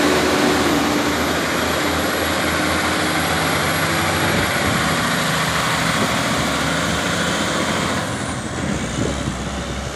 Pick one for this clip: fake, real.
real